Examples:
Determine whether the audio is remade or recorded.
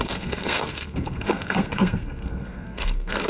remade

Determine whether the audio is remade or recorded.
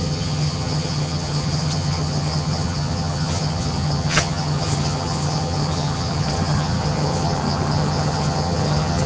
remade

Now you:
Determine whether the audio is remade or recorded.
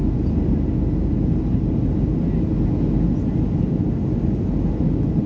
recorded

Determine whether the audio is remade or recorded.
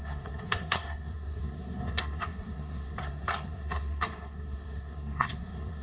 remade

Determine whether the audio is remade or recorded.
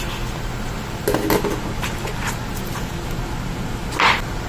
recorded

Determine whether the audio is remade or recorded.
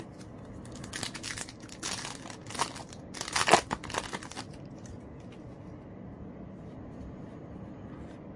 recorded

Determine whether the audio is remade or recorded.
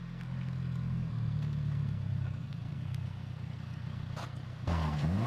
remade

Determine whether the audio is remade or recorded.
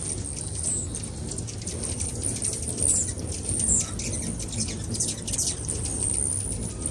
recorded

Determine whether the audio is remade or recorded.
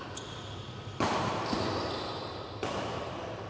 remade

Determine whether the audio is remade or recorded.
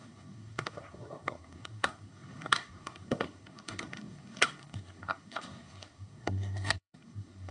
remade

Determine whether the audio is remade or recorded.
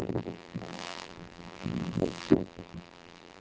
remade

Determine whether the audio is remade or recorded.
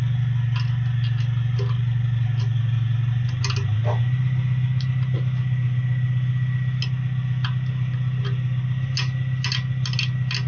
recorded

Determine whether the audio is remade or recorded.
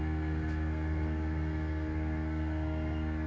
remade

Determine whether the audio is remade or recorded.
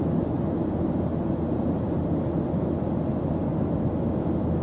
recorded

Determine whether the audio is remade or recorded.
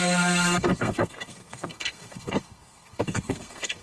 remade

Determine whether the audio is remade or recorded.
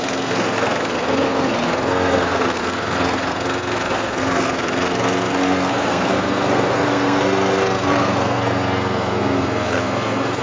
remade